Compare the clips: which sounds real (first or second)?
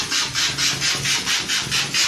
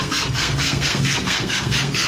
first